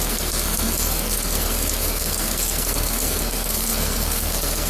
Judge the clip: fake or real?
fake